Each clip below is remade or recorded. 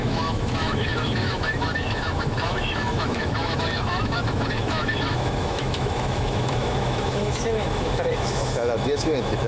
remade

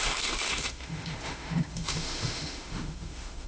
remade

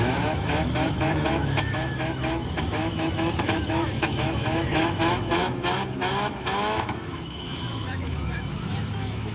remade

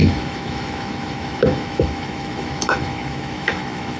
remade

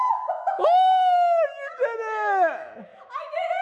remade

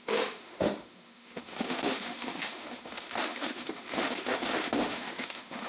remade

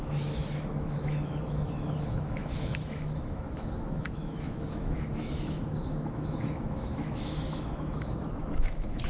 remade